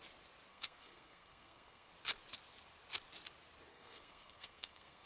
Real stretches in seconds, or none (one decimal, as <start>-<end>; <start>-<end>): 0.0-0.5; 1.9-3.7